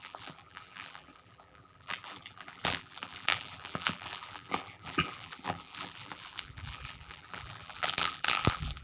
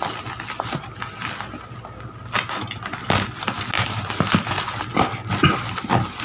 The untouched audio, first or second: second